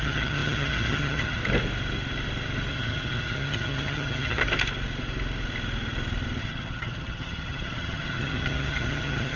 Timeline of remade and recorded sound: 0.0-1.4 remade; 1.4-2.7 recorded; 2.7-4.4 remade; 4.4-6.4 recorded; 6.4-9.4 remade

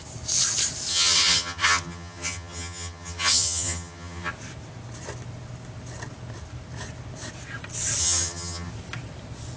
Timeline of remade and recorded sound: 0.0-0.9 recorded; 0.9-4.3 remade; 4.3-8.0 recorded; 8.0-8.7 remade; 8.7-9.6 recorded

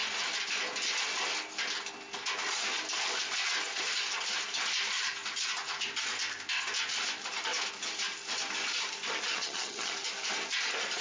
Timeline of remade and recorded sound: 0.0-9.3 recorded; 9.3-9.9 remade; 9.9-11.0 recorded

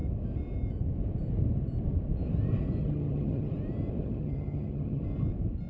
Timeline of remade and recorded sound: 0.0-2.8 recorded; 2.8-3.5 remade; 3.5-4.0 recorded; 4.0-5.0 remade; 5.0-5.7 recorded

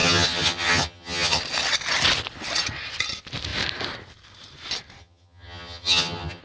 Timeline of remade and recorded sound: 0.0-1.4 remade; 1.4-5.0 recorded; 5.0-6.4 remade

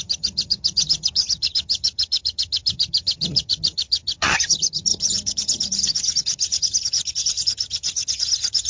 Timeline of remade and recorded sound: 0.0-8.7 remade